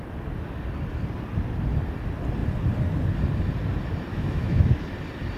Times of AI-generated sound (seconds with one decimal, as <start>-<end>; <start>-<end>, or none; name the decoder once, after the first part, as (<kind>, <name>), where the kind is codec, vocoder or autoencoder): 4.1-4.7 (autoencoder, DAC-VAE)